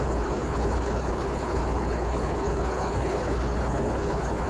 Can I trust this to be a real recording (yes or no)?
no